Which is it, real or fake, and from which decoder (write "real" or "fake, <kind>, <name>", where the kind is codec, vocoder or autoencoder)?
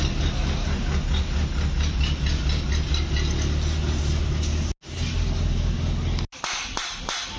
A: real